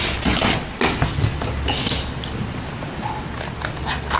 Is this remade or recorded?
recorded